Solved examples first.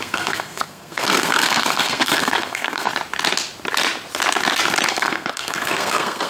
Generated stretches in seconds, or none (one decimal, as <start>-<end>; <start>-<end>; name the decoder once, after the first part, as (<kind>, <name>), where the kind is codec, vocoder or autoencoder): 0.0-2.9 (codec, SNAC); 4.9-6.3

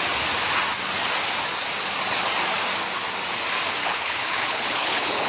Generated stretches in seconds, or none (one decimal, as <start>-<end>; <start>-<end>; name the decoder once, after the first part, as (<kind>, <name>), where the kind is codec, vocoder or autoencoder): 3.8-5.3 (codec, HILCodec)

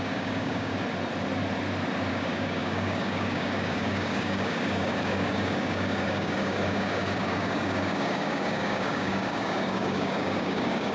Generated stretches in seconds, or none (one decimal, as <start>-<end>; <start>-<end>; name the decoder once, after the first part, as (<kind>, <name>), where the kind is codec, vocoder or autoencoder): 0.0-0.7 (codec, DAC); 2.1-10.9

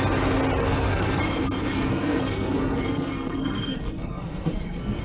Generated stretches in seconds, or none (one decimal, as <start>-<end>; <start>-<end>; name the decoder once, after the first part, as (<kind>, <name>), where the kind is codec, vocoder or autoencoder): 0.6-1.2 (codec, SNAC); 1.7-5.0

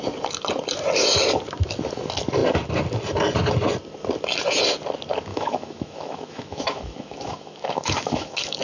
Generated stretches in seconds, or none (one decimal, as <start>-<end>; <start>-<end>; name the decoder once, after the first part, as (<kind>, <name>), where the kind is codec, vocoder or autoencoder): 5.3-8.6 (autoencoder, DAC-VAE)